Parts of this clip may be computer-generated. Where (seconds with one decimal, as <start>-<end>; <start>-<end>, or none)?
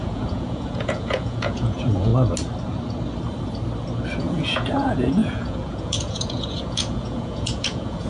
0.0-2.1; 4.2-8.1